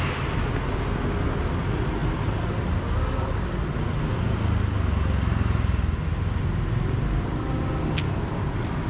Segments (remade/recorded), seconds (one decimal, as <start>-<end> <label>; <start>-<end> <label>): 0.0-8.9 recorded